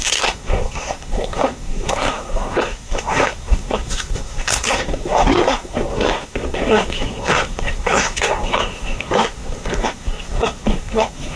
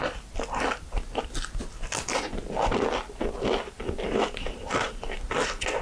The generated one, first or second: first